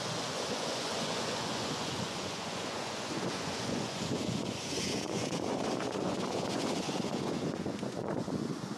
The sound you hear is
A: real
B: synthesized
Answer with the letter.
B